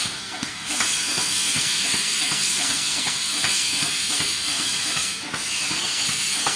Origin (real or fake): fake